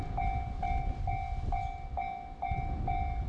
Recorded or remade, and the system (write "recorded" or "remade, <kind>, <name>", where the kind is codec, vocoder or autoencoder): recorded